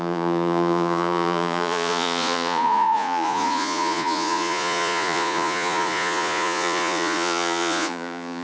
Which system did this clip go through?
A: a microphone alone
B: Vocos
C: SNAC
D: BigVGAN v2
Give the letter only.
B